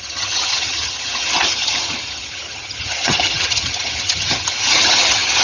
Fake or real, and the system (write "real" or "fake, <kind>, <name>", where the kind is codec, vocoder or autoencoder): fake, vocoder, HiFi-GAN